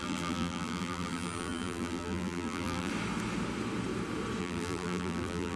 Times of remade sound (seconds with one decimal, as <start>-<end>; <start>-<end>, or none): 0.0-2.9; 4.4-5.6